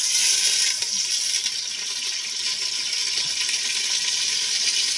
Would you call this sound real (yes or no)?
yes